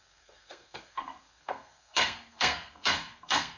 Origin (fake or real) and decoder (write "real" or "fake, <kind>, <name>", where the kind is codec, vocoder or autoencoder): fake, codec, SNAC